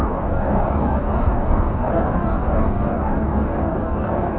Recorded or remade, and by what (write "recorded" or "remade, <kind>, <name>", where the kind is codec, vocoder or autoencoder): remade, codec, DAC